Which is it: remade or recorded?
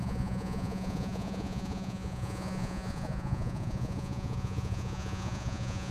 remade